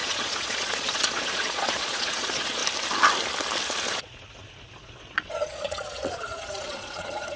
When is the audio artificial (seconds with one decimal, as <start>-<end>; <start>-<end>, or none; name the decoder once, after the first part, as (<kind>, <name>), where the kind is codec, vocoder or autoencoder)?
0.0-2.6 (vocoder, Vocos); 3.9-7.4